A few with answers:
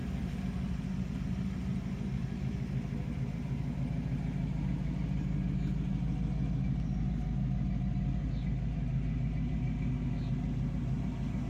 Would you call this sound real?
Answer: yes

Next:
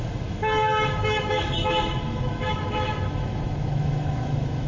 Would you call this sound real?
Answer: no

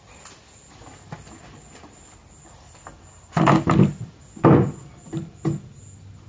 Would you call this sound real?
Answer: yes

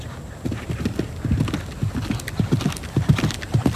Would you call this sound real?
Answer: yes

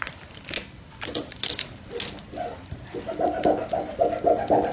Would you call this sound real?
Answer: yes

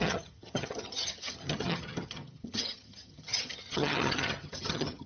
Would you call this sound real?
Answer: no